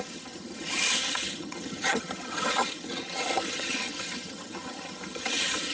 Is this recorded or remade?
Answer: remade